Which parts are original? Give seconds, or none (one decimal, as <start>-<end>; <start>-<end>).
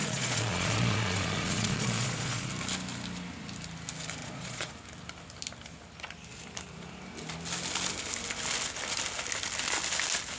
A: 2.5-4.2; 4.7-10.4